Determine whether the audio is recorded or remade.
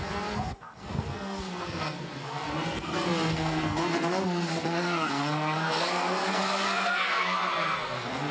remade